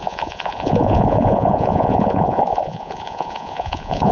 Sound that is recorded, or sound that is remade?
remade